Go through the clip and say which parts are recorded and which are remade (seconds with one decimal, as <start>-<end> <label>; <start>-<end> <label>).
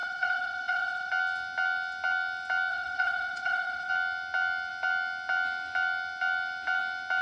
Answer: 0.0-1.1 remade; 1.1-2.7 recorded; 2.7-3.9 remade; 3.9-7.2 recorded